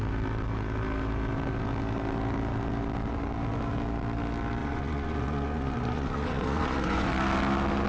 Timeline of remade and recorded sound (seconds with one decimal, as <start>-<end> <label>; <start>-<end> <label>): 0.0-4.6 recorded; 4.6-7.1 remade; 7.1-7.9 recorded